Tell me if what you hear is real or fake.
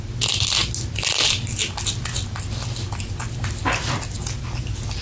real